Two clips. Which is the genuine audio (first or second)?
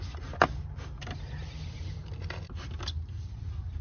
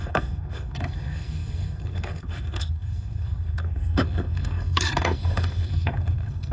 first